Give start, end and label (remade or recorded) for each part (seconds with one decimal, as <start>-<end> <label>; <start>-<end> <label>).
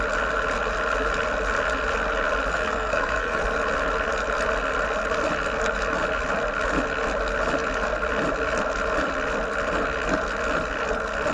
0.0-2.5 recorded; 2.5-3.4 remade; 3.4-11.3 recorded